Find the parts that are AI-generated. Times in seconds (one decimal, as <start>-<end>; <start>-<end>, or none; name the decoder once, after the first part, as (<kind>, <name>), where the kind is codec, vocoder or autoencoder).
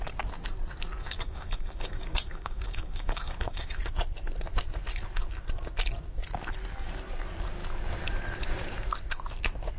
1.0-3.8 (codec, DAC)